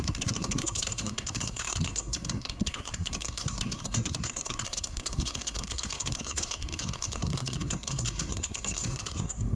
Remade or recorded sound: remade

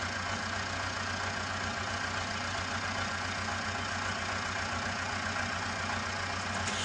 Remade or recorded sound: remade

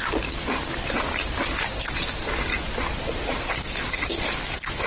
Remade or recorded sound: recorded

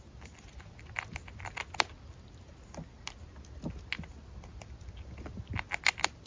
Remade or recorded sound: recorded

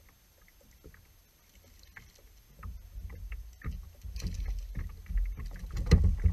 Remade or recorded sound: recorded